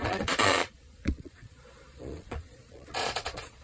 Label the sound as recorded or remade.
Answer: remade